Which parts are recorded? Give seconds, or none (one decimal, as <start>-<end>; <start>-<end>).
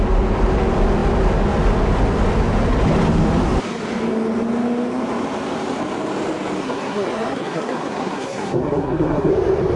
0.0-6.6; 9.3-9.8